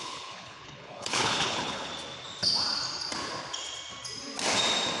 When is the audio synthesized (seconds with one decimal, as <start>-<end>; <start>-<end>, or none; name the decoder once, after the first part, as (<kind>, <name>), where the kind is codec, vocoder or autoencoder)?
0.0-1.9 (codec, HILCodec)